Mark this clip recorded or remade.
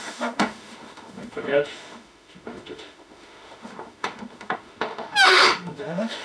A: remade